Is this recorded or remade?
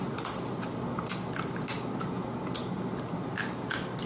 recorded